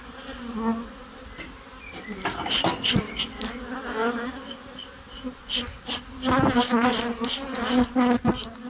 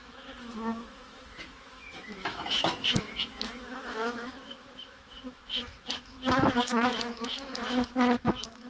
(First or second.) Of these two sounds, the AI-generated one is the second